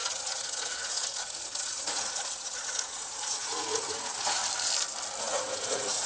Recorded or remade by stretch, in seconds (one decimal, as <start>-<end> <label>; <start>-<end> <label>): 0.0-4.4 remade; 4.4-5.2 recorded; 5.2-6.1 remade